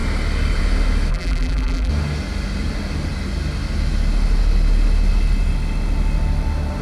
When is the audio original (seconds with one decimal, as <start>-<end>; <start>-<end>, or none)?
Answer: 0.0-1.1; 1.9-6.8